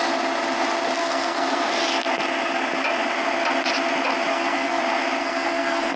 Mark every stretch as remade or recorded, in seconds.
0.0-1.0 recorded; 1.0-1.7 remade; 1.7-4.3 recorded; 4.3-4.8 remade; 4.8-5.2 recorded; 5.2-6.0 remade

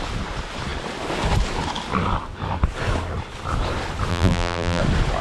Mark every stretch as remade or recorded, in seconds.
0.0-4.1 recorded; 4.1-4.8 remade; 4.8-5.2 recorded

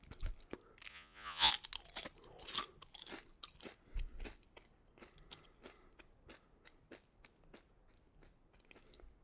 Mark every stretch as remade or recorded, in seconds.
0.0-0.9 recorded; 0.9-1.5 remade; 1.5-9.2 recorded

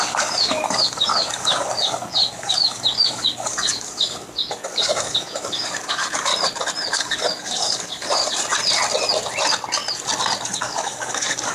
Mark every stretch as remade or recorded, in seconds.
0.0-6.3 remade; 6.3-6.9 recorded; 6.9-8.2 remade; 8.2-10.6 recorded; 10.6-11.5 remade